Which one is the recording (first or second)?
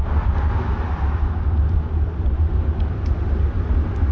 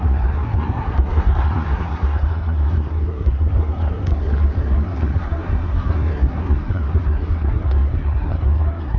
first